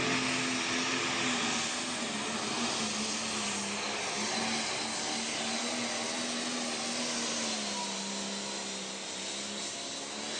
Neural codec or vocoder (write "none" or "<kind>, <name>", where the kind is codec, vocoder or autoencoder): none